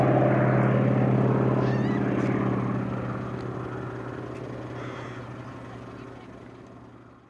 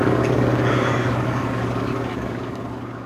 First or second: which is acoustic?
first